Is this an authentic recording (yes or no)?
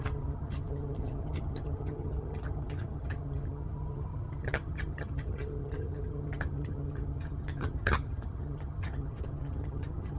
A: no